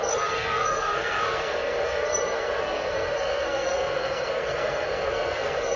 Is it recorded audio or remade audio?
remade